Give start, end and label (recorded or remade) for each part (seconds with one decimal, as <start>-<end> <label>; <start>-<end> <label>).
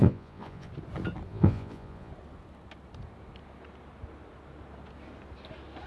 0.0-0.7 remade; 0.7-1.3 recorded; 1.3-2.1 remade; 2.1-5.9 recorded